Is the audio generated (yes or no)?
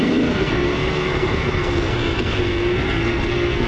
yes